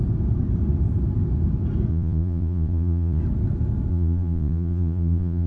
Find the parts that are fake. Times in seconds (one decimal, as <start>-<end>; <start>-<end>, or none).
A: 1.9-3.2; 3.9-5.5